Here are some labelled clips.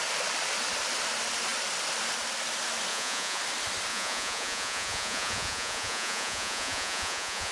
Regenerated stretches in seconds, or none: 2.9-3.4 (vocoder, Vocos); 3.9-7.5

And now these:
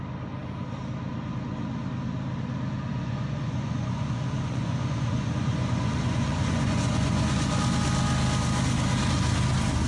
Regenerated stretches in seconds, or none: 2.9-7.5 (vocoder, Vocos)

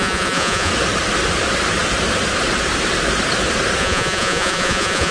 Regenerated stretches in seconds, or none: 0.0-0.7 (vocoder, Vocos); 3.8-5.1

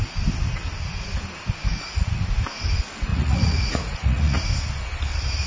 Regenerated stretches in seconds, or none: 1.6-2.2 (vocoder, Vocos); 3.1-4.5

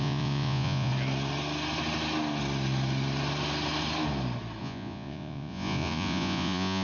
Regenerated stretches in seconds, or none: 0.0-0.9 (vocoder, Vocos); 4.6-6.8